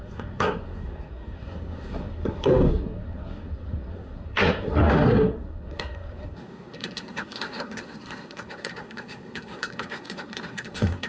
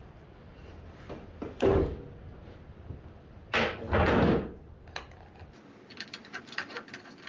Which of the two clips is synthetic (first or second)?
first